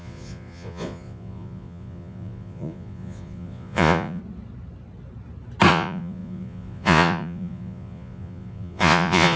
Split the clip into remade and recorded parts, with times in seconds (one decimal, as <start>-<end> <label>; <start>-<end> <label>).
0.0-4.2 remade; 4.2-5.7 recorded; 5.7-9.4 remade